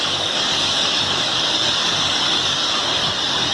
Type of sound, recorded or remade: remade